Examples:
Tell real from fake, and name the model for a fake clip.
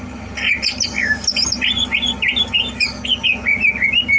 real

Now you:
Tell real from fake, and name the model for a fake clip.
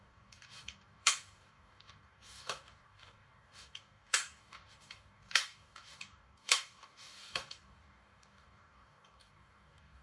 fake, codec, DAC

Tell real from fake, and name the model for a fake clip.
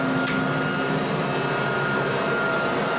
real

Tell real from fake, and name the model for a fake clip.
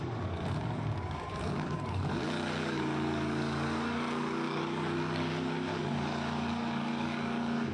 fake, codec, DAC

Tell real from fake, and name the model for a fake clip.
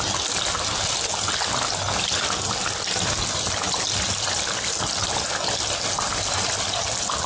real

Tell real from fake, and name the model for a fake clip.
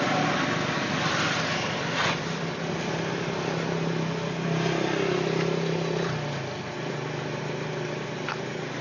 real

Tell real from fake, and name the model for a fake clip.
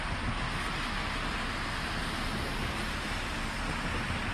real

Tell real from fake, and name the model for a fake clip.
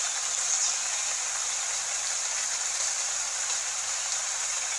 real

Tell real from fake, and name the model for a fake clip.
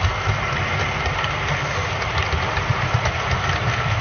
real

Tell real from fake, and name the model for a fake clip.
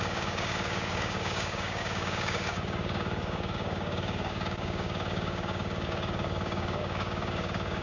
fake, codec, DAC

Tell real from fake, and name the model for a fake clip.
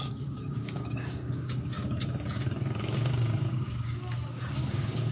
fake, codec, DAC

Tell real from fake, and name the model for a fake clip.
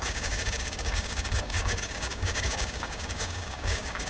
fake, codec, DAC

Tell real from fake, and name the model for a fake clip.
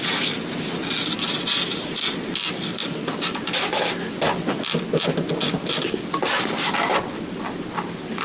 real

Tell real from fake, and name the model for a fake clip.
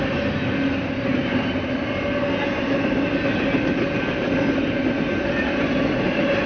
real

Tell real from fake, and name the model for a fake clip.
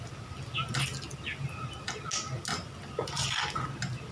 real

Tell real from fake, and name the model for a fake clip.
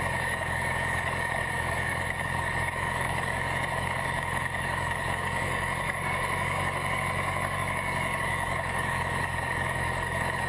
fake, codec, DAC